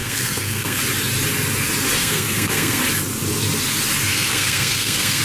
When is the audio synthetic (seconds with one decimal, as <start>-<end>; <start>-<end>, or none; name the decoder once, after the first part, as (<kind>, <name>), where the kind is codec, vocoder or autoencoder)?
0.0-0.8 (codec, SNAC); 2.0-2.8; 4.1-5.2